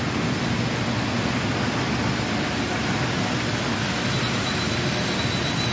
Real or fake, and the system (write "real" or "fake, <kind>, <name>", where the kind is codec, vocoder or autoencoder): real